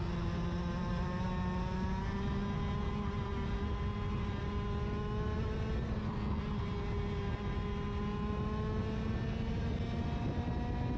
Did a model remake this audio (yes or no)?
no